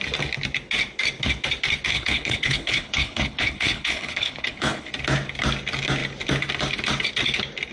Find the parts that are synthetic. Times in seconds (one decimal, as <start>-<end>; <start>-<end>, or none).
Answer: 1.9-4.9